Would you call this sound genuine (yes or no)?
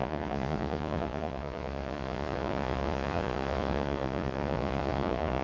no